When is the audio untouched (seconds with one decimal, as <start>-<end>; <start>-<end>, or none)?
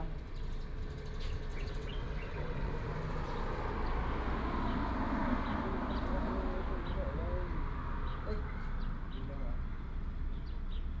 0.0-1.5; 2.7-11.0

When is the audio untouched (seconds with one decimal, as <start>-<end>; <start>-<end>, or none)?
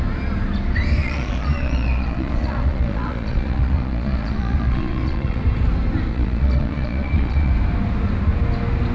0.0-1.0; 5.4-6.1; 7.5-8.9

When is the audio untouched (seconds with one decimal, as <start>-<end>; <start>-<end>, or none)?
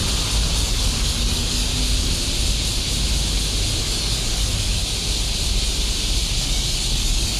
0.0-0.6; 1.7-3.8; 4.8-6.4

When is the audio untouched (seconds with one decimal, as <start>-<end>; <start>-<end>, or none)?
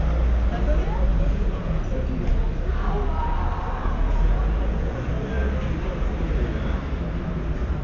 0.0-1.1; 1.8-3.8; 5.1-7.8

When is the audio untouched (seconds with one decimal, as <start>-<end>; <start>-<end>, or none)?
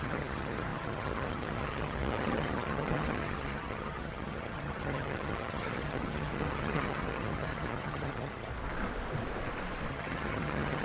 8.5-9.9